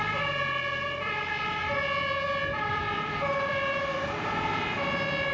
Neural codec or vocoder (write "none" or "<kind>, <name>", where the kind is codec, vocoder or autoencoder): vocoder, BigVGAN v2